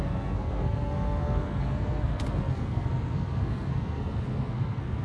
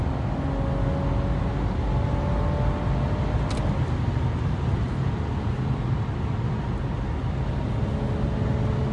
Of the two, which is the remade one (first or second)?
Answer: first